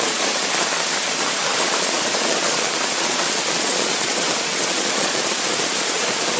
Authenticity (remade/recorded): remade